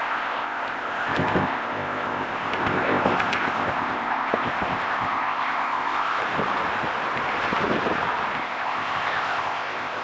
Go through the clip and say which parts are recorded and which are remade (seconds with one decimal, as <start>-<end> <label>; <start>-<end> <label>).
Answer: 0.0-6.2 remade; 6.2-8.4 recorded; 8.4-10.0 remade